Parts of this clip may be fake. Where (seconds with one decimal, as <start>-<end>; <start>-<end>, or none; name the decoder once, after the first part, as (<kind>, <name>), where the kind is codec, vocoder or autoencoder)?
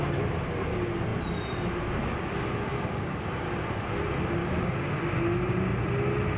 2.7-3.5 (codec, DAC); 4.4-5.0